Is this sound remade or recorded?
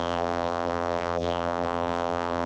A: remade